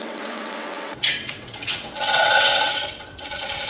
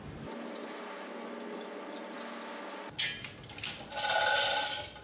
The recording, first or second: second